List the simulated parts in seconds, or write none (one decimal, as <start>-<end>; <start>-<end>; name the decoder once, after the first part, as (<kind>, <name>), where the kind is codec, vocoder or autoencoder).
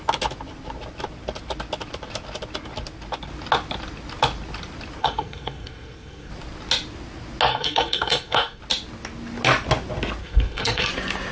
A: 5.0-6.3 (codec, SNAC); 7.5-8.6; 10.2-10.9